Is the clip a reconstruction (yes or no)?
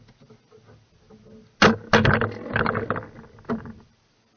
no